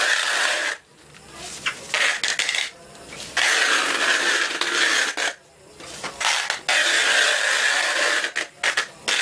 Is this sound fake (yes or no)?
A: no